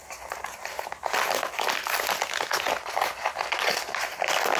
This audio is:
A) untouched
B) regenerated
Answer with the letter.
A